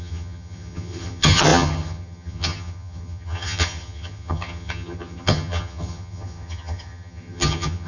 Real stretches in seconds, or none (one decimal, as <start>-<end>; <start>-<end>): none